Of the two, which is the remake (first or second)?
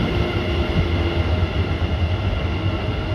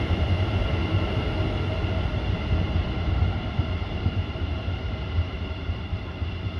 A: second